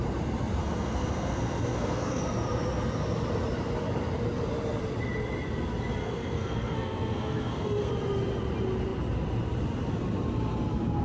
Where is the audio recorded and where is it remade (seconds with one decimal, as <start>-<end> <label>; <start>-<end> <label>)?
0.0-0.6 recorded; 0.6-2.2 remade; 2.2-6.0 recorded; 6.0-7.9 remade; 7.9-11.0 recorded